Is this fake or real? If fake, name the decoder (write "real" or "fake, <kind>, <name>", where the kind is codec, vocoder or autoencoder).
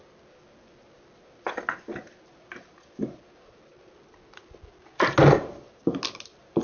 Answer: real